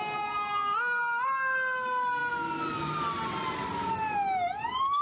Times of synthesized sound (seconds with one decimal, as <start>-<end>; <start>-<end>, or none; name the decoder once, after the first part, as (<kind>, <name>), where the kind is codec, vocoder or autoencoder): none